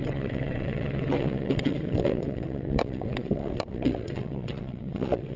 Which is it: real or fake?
fake